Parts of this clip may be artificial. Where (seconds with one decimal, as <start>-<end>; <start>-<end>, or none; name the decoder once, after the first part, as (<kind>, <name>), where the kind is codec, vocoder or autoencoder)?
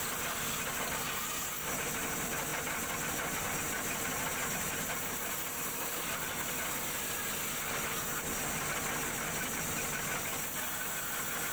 none